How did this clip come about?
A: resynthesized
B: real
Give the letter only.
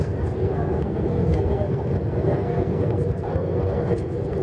A